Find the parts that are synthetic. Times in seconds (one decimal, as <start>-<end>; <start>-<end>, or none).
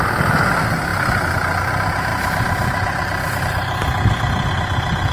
0.0-0.9; 1.6-3.8; 4.5-5.1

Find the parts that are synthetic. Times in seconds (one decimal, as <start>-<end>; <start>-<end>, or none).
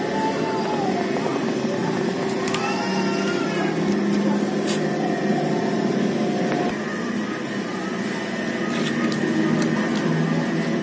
7.9-9.2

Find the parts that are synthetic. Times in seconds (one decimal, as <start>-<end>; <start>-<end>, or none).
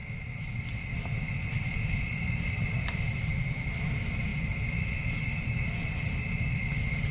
0.0-3.8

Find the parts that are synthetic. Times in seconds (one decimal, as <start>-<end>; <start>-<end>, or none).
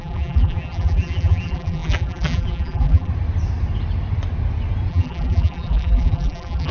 0.0-3.1; 4.9-6.7